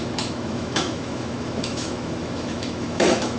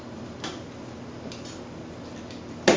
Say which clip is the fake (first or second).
first